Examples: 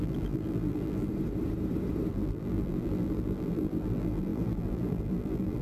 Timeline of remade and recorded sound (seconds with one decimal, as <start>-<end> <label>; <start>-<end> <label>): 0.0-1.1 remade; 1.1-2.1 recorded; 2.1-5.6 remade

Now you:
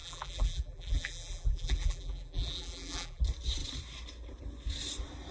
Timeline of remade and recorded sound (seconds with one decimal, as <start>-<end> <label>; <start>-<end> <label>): 0.0-3.2 remade; 3.2-5.3 recorded

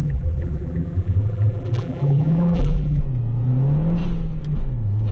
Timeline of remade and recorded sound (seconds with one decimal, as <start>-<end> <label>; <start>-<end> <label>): 0.0-3.0 remade; 3.0-5.1 recorded